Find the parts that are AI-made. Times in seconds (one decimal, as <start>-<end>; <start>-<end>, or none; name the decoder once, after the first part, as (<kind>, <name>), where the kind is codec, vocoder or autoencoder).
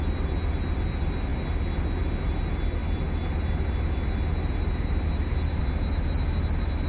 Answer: none